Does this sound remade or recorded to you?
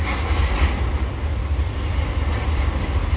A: recorded